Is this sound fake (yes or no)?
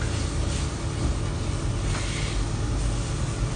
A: no